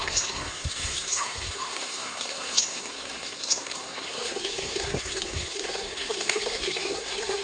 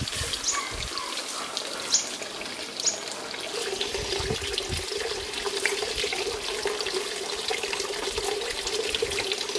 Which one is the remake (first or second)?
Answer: first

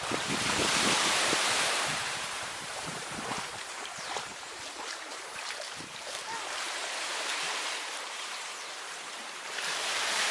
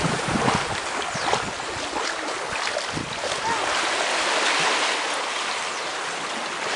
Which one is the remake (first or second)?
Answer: first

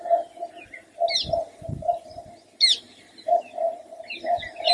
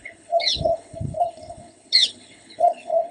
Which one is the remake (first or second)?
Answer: second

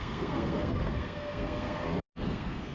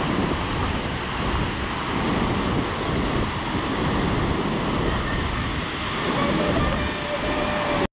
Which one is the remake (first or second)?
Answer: first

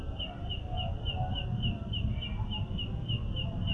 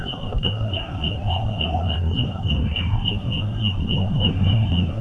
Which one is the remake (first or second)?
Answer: second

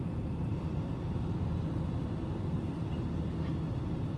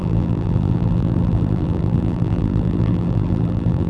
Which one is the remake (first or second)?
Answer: second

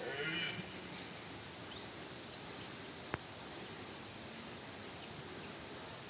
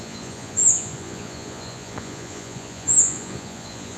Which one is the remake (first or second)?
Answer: second